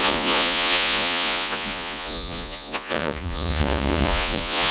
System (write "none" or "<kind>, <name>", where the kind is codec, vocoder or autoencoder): vocoder, Vocos